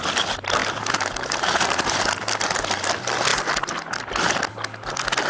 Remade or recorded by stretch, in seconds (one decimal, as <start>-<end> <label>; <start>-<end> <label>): 0.0-0.6 recorded; 0.6-2.0 remade; 2.0-5.3 recorded